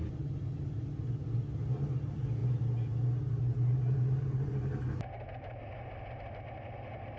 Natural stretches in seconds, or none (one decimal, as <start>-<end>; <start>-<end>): 0.0-7.2